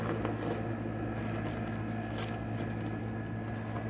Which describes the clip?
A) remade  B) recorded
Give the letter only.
B